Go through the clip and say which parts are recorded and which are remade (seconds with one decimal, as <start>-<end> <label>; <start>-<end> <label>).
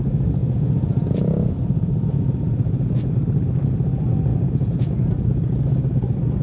0.0-0.4 recorded; 0.4-3.1 remade; 3.1-4.3 recorded; 4.3-5.5 remade; 5.5-6.4 recorded